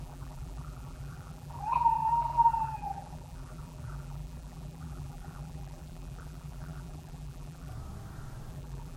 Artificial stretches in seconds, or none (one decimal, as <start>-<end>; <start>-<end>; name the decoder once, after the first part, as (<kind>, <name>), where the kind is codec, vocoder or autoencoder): 0.0-7.7 (vocoder, BigVGAN v2); 8.5-9.0

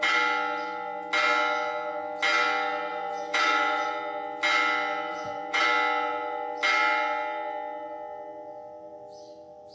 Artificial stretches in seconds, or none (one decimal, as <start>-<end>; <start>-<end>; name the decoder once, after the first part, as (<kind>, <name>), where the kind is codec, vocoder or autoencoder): 2.9-3.9 (vocoder, Vocos); 5.1-5.6

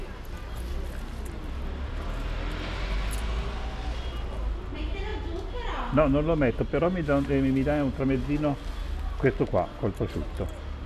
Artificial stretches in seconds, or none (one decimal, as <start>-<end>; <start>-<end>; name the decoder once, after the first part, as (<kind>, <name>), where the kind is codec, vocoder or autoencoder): none

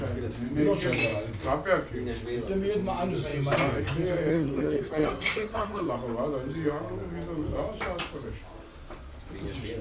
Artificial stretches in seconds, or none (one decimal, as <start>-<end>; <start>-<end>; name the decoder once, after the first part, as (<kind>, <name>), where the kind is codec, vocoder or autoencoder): 4.3-5.9 (codec, SNAC)

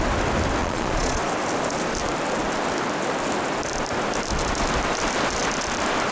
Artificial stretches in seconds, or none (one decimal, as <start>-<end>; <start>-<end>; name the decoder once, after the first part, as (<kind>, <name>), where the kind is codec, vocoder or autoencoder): 0.6-1.2 (vocoder, Vocos)

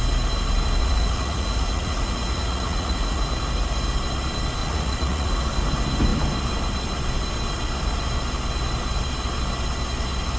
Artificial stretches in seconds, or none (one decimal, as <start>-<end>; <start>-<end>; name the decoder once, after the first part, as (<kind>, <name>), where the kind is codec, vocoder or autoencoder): 0.8-3.2 (vocoder, Vocos); 4.6-5.4

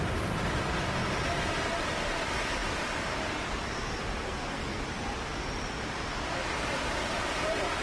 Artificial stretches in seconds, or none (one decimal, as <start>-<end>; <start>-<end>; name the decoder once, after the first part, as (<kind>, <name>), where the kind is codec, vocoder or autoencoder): 4.2-4.8 (codec, SNAC)